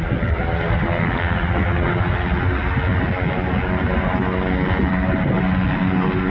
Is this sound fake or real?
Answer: real